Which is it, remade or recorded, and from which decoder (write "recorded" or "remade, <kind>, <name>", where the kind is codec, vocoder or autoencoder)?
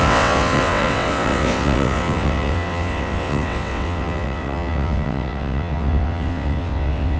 remade, vocoder, WaveNeXt